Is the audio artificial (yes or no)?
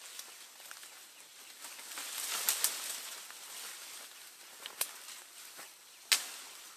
no